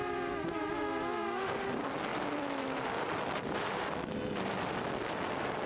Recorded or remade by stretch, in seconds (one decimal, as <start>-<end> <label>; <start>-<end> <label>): 0.0-5.7 recorded

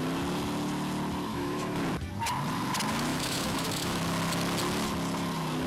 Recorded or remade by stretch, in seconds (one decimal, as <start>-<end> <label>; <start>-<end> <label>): 0.0-1.3 recorded; 1.3-1.9 remade; 1.9-3.1 recorded; 3.1-4.0 remade; 4.0-5.7 recorded

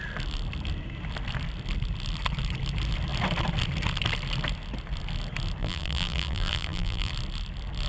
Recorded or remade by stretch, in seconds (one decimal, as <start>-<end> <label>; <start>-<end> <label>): 0.0-5.6 recorded; 5.6-7.1 remade; 7.1-7.9 recorded

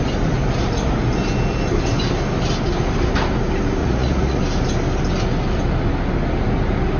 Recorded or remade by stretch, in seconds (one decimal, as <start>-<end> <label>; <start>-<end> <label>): 0.0-3.8 recorded; 3.8-4.4 remade; 4.4-7.0 recorded

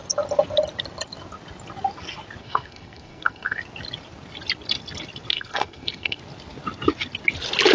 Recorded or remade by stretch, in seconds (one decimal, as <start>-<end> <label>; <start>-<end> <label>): 0.0-2.4 recorded; 2.4-3.6 remade; 3.6-5.3 recorded; 5.3-6.2 remade; 6.2-7.7 recorded

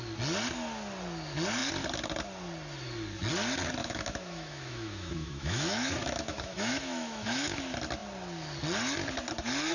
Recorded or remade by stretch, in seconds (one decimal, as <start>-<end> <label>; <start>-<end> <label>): 0.0-3.8 recorded; 3.8-7.6 remade; 7.6-9.7 recorded

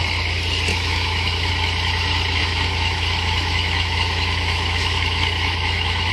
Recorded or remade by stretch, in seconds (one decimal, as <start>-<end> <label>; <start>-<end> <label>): 0.0-0.7 recorded; 0.7-1.5 remade; 1.5-2.4 recorded; 2.4-6.1 remade